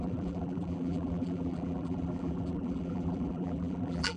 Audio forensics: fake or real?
fake